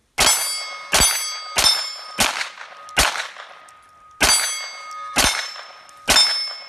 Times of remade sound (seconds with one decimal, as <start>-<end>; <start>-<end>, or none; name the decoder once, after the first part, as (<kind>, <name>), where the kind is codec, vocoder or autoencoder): none